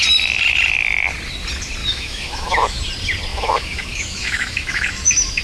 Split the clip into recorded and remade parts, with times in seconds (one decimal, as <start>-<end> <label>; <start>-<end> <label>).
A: 0.0-1.8 recorded; 1.8-2.8 remade; 2.8-3.3 recorded; 3.3-5.4 remade